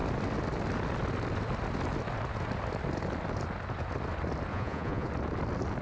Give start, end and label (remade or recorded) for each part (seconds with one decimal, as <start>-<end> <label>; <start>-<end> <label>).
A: 0.0-4.5 recorded; 4.5-5.1 remade; 5.1-5.8 recorded

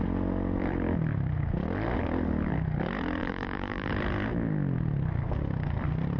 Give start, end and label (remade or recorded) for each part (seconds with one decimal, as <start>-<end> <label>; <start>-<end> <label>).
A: 0.0-3.2 recorded; 3.2-3.9 remade; 3.9-6.2 recorded

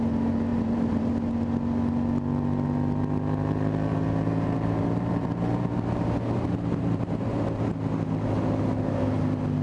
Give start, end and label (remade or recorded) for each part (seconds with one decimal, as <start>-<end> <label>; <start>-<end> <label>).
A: 0.0-0.5 recorded; 0.5-1.1 remade; 1.1-3.9 recorded; 3.9-7.7 remade; 7.7-9.6 recorded

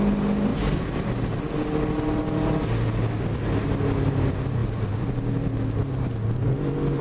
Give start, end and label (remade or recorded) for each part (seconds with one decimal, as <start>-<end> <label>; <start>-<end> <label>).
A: 0.0-7.0 recorded

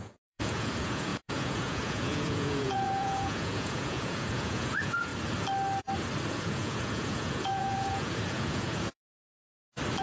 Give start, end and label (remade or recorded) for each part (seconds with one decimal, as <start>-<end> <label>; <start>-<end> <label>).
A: 0.0-5.1 remade; 5.1-6.3 recorded; 6.3-9.3 remade; 9.3-10.0 recorded

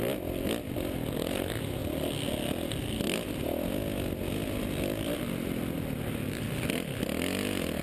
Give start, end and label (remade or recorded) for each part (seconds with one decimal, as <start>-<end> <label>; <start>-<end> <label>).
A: 0.0-7.8 recorded

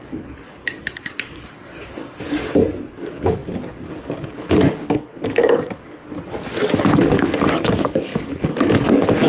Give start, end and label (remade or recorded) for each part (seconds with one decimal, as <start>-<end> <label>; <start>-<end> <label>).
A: 0.0-6.0 remade; 6.0-6.8 recorded; 6.8-9.3 remade

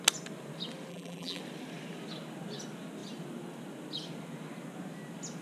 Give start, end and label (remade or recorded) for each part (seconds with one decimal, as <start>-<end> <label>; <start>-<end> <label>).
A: 0.0-0.9 recorded; 0.9-1.4 remade; 1.4-5.4 recorded